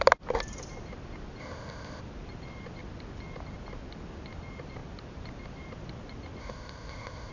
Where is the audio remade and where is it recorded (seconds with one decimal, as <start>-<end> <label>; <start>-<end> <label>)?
0.0-1.4 recorded; 1.4-2.0 remade; 2.0-6.4 recorded; 6.4-7.3 remade